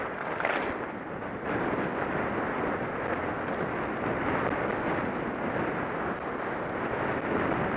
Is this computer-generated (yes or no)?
no